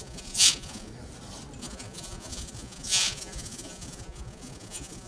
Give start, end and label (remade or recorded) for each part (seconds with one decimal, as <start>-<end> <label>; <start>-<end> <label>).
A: 0.0-0.9 remade; 0.9-1.6 recorded; 1.6-5.1 remade